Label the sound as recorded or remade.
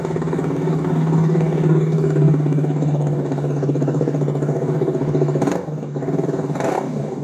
remade